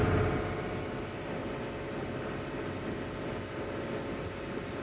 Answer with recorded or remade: recorded